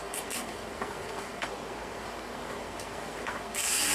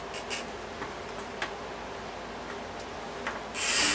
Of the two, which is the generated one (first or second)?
first